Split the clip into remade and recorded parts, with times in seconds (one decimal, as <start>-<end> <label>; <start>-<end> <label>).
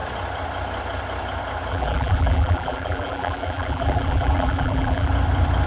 0.0-1.7 recorded; 1.7-5.1 remade; 5.1-5.7 recorded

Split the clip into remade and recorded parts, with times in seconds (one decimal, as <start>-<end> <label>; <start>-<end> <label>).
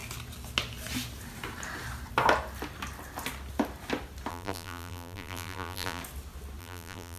0.0-4.3 recorded; 4.3-6.0 remade; 6.0-6.6 recorded; 6.6-7.2 remade